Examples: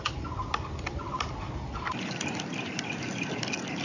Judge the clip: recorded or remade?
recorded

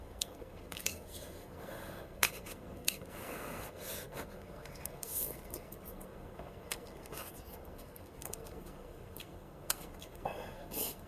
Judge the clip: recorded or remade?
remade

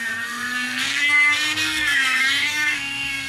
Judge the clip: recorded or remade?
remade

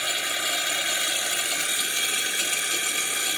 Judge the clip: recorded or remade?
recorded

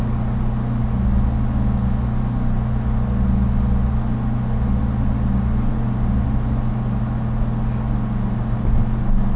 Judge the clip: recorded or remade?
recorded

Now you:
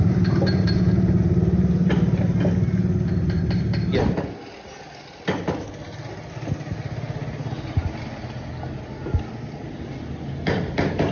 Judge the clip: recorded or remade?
recorded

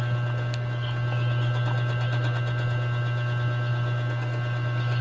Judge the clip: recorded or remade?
recorded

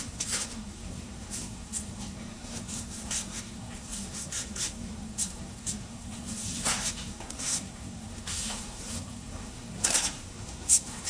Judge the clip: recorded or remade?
remade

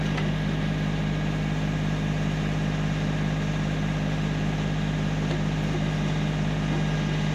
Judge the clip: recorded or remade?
recorded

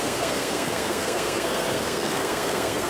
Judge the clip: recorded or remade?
remade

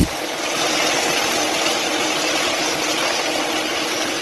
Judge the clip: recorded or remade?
recorded